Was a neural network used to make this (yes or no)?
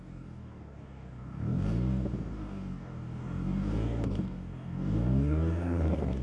yes